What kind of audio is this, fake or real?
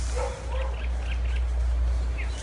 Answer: real